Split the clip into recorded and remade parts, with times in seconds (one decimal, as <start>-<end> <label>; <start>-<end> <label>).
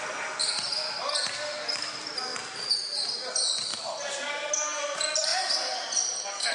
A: 0.0-0.4 recorded; 0.4-1.0 remade; 1.0-6.5 recorded